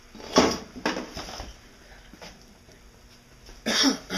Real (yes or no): yes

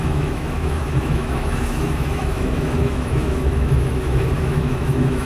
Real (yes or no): no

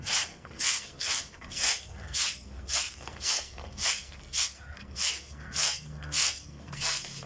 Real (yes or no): no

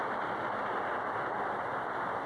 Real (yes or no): yes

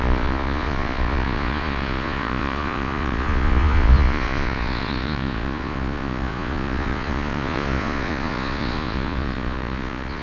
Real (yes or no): no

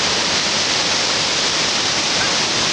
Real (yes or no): yes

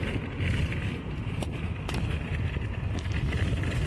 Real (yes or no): yes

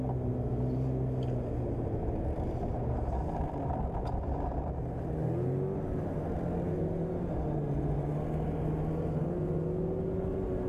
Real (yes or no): yes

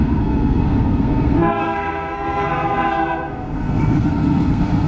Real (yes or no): no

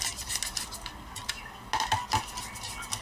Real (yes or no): yes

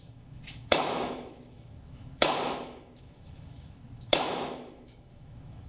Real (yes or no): no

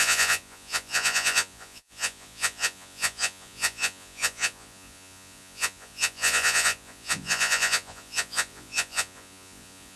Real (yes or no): no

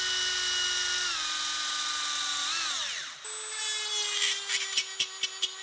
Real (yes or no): yes